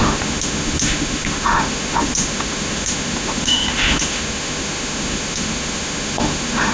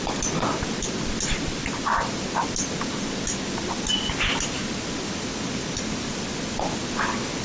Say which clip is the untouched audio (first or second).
second